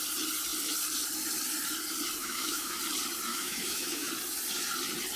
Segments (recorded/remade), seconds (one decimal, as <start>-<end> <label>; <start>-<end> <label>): 0.0-2.2 recorded; 2.2-2.8 remade; 2.8-3.3 recorded; 3.3-4.1 remade; 4.1-5.2 recorded